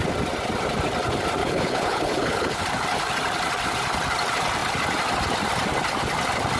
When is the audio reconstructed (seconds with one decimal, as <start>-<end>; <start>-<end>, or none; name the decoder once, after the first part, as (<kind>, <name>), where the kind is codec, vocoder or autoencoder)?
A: 1.4-2.6 (codec, HILCodec)